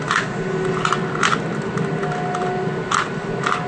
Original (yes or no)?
yes